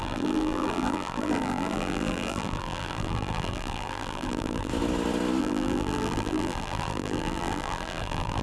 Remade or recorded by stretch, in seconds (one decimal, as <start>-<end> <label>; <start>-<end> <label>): 0.0-4.7 remade; 4.7-5.4 recorded; 5.4-8.4 remade